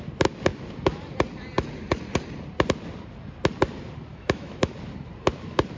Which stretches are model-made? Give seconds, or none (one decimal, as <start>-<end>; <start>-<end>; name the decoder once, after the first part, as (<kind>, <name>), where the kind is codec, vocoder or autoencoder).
4.1-4.7 (autoencoder, DAC-VAE)